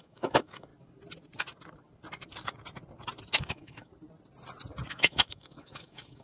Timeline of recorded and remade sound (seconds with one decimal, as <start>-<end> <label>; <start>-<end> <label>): 0.0-0.7 remade; 0.7-3.4 recorded; 3.4-3.9 remade; 3.9-4.9 recorded; 4.9-6.2 remade